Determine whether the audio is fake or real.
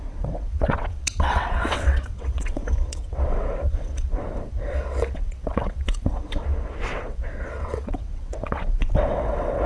fake